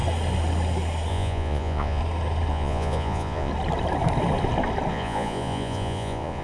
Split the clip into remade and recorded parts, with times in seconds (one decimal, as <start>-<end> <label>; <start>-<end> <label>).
0.0-1.1 recorded; 1.1-2.0 remade; 2.0-2.5 recorded; 2.5-3.5 remade; 3.5-4.9 recorded; 4.9-6.4 remade